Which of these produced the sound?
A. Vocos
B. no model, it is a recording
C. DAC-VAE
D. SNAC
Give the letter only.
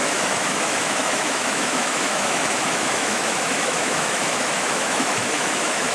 C